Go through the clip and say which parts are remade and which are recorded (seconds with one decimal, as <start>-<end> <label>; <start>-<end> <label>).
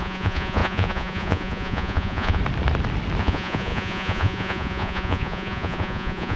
0.0-2.4 remade; 2.4-3.2 recorded; 3.2-6.4 remade